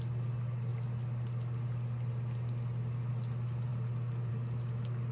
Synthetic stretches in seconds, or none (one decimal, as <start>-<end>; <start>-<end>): none